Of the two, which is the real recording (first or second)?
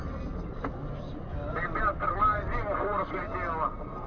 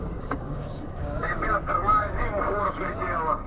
first